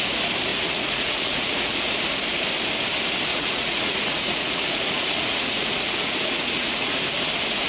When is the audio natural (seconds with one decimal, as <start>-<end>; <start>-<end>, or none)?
0.0-0.5; 1.9-3.3; 7.0-7.7